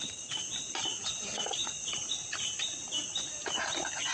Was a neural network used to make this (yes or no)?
no